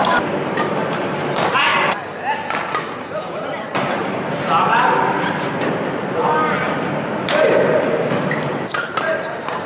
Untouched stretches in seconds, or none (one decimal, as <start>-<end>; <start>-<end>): 1.7-3.2; 4.0-7.1